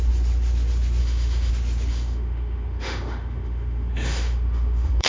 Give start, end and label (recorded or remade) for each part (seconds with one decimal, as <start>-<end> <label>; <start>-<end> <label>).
0.0-1.0 recorded; 1.0-1.5 remade; 1.5-1.9 recorded; 1.9-5.1 remade